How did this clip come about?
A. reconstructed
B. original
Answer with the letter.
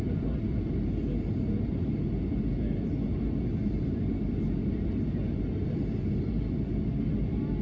B